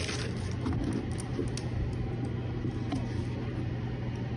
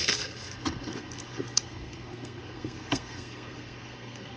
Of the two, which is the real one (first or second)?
first